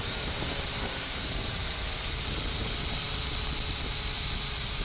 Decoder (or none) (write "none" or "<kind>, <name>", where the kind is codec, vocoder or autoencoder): vocoder, BigVGAN v2